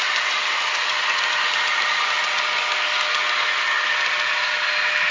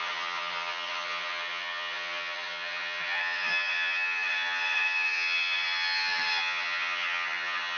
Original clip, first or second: first